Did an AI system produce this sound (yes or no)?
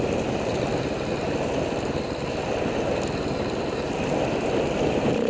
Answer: no